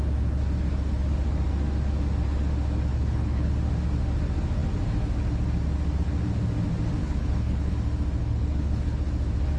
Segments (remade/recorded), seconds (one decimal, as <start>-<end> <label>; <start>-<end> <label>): 0.0-2.9 recorded; 2.9-3.5 remade; 3.5-7.0 recorded; 7.0-7.7 remade; 7.7-8.2 recorded; 8.2-9.1 remade; 9.1-9.6 recorded